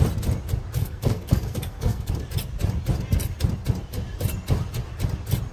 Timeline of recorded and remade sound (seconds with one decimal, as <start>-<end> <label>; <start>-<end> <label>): 0.0-0.8 recorded; 0.8-2.1 remade; 2.1-5.5 recorded